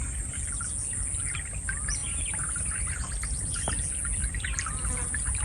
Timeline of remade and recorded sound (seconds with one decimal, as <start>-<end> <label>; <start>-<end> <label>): 0.0-2.0 recorded; 2.0-3.7 remade; 3.7-5.4 recorded